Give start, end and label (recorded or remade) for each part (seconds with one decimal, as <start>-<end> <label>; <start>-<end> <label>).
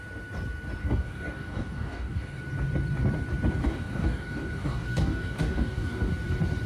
0.0-0.8 recorded; 0.8-2.4 remade; 2.4-3.6 recorded; 3.6-6.1 remade; 6.1-6.7 recorded